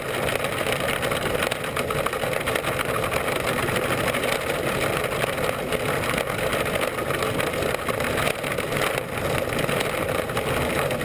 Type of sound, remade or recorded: recorded